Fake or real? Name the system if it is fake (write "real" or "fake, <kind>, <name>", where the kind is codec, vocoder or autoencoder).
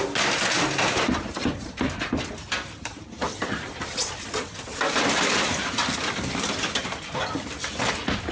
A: real